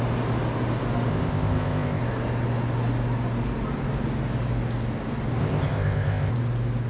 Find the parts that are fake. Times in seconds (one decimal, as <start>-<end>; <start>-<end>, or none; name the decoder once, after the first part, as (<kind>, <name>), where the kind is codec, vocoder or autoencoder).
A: 1.1-2.0 (codec, ZipCodec); 5.4-6.3